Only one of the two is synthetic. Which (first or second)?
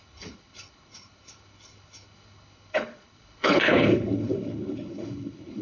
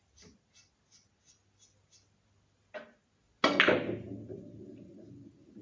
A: first